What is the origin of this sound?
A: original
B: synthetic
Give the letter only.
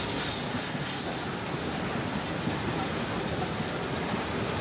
A